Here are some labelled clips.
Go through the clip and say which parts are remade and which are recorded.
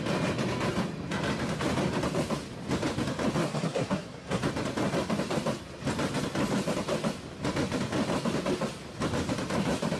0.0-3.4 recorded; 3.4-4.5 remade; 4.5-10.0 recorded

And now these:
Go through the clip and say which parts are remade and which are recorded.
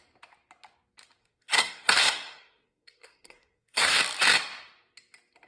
0.0-1.2 recorded; 1.2-4.0 remade; 4.0-5.5 recorded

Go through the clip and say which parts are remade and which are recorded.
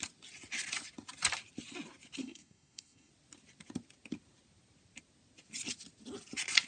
0.0-2.2 recorded; 2.2-3.1 remade; 3.1-6.7 recorded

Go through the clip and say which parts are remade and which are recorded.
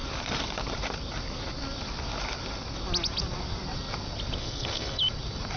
0.0-4.4 recorded; 4.4-5.0 remade; 5.0-5.6 recorded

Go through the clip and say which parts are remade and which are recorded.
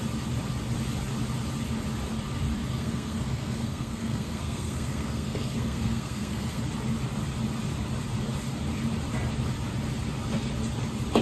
0.0-2.7 recorded; 2.7-6.6 remade; 6.6-11.2 recorded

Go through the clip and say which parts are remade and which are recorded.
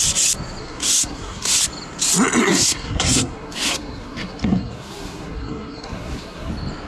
0.0-0.6 recorded; 0.6-1.6 remade; 1.6-2.4 recorded; 2.4-6.5 remade; 6.5-6.9 recorded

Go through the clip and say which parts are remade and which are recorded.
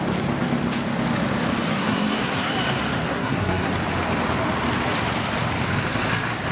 0.0-1.7 recorded; 1.7-2.5 remade; 2.5-3.1 recorded; 3.1-3.7 remade; 3.7-6.5 recorded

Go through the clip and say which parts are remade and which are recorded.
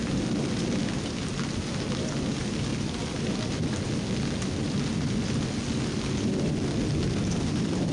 0.0-7.9 recorded